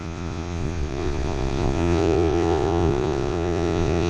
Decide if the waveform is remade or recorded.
remade